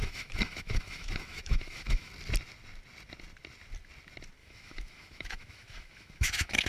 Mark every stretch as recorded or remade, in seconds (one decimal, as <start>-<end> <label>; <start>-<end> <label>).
0.0-2.1 remade; 2.1-4.4 recorded; 4.4-6.7 remade